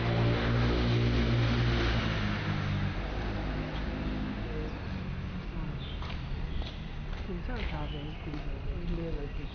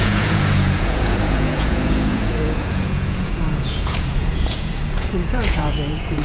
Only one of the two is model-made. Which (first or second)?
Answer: second